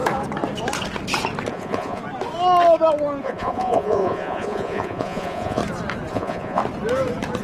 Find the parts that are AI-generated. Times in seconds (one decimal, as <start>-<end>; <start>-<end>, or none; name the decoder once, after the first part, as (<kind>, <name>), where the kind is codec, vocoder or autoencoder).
1.5-2.0 (vocoder, Vocos); 3.2-5.6; 6.1-6.6